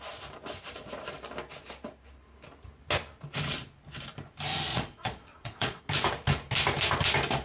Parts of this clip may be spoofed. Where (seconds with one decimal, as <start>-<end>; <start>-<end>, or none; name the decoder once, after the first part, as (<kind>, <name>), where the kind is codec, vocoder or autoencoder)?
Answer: 4.7-5.8 (vocoder, Vocos)